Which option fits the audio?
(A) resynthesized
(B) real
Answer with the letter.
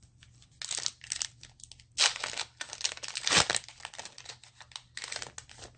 B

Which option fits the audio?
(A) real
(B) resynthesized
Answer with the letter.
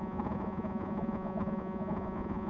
B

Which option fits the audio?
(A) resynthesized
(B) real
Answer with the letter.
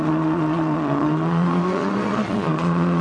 A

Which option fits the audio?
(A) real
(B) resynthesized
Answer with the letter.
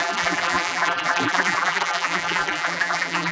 B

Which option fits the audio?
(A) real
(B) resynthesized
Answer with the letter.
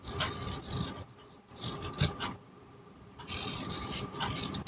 A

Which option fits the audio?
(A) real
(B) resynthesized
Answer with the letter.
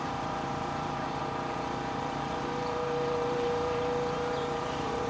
B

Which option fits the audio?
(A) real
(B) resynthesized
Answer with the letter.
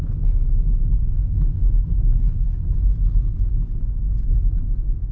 A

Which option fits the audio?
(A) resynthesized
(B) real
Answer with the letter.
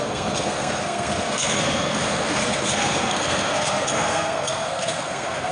A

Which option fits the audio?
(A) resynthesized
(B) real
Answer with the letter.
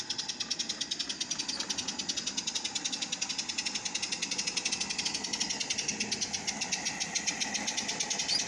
B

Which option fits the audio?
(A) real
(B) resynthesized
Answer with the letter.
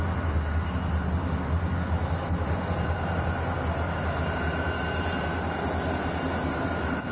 A